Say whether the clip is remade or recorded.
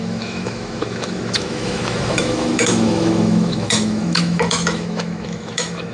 remade